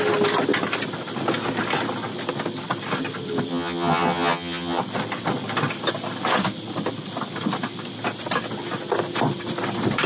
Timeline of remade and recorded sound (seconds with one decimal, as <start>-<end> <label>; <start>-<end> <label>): 0.0-3.5 recorded; 3.5-4.8 remade; 4.8-10.1 recorded